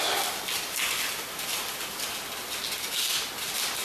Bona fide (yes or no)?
yes